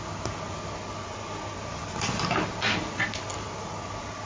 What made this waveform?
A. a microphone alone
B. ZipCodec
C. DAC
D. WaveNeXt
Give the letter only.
A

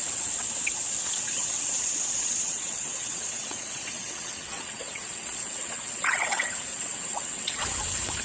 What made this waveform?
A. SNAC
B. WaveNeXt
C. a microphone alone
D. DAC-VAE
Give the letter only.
B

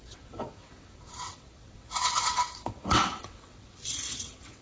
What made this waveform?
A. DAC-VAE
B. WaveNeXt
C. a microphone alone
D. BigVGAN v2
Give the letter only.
B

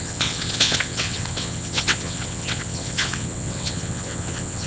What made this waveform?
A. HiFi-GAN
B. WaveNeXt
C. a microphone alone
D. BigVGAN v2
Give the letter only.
B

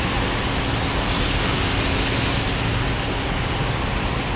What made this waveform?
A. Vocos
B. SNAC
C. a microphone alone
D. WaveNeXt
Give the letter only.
C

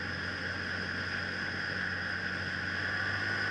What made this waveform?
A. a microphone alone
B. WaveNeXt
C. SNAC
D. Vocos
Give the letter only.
A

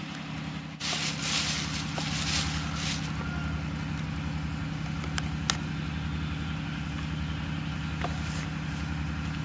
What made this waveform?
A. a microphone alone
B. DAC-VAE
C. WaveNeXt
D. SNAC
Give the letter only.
A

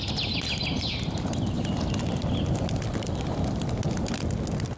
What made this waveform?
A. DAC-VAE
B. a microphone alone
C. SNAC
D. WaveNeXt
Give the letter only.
B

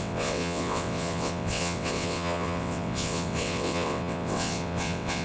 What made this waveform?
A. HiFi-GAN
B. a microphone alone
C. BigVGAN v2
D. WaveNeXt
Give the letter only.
D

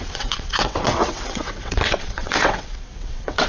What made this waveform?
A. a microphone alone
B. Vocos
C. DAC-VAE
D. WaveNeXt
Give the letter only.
D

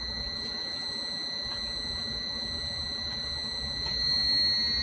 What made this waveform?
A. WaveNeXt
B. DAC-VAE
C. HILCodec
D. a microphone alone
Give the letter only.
D